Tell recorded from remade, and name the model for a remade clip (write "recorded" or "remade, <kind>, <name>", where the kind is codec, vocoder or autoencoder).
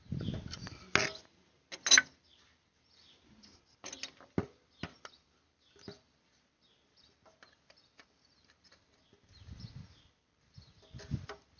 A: recorded